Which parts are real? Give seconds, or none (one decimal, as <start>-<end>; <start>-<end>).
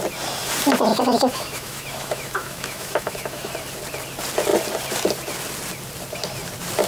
0.0-0.9; 3.5-6.9